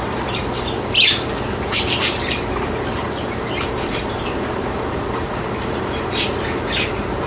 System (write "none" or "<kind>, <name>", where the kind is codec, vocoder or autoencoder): vocoder, BigVGAN v2